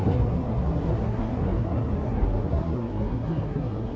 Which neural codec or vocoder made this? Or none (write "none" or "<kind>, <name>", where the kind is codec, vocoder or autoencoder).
codec, SNAC